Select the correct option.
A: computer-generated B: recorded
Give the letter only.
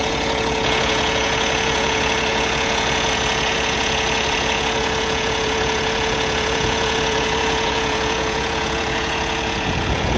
A